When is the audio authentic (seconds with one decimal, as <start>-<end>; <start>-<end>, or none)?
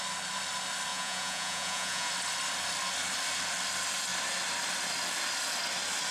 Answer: 0.0-0.9; 2.1-6.1